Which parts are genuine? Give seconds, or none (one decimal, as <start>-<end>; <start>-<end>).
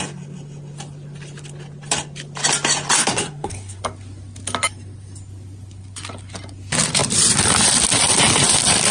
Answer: 0.0-3.0; 3.8-8.9